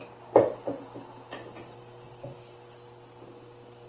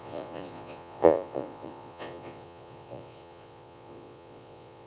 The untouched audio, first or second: first